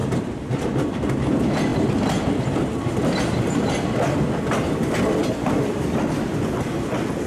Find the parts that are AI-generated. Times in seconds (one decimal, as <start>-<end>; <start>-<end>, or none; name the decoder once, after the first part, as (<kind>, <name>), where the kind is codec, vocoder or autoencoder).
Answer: 0.0-1.1 (vocoder, BigVGAN v2); 1.7-6.1